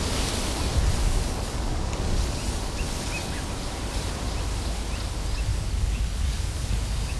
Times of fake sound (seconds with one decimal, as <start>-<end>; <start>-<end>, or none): 1.0-2.2; 5.5-7.2